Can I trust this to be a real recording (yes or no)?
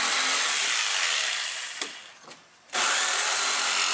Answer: yes